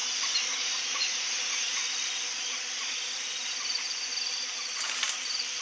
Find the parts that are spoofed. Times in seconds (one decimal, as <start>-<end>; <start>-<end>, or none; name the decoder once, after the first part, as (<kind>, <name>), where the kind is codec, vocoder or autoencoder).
0.6-1.8 (vocoder, Vocos)